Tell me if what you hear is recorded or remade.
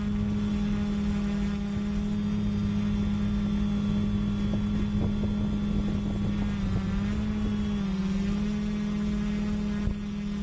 recorded